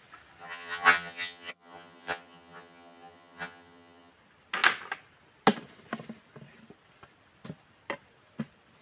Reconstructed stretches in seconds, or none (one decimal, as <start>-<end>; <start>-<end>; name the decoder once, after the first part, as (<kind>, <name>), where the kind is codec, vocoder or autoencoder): 0.4-4.1 (vocoder, HiFi-GAN)